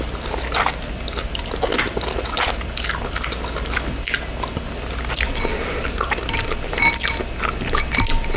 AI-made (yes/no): no